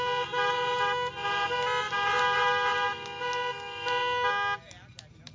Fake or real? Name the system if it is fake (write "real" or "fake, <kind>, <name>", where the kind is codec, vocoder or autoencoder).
real